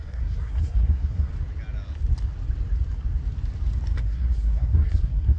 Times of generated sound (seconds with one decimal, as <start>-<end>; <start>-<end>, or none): 0.0-1.3; 4.0-5.4